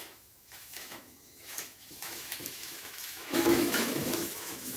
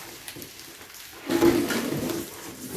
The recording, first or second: second